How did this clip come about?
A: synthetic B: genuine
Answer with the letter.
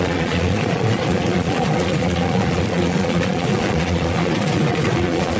A